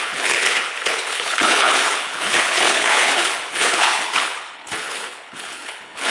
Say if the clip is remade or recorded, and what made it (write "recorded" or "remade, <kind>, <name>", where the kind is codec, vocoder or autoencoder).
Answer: remade, codec, HILCodec